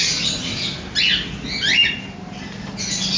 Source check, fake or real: real